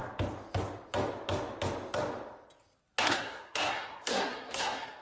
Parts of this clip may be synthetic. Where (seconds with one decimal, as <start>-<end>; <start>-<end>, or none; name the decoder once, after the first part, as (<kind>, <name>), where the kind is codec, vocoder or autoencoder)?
3.0-5.0 (codec, SNAC)